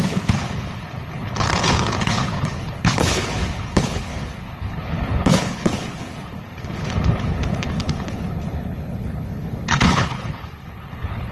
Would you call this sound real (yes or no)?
no